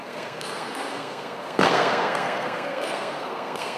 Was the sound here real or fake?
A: fake